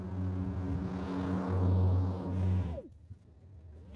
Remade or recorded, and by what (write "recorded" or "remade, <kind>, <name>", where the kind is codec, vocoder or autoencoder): recorded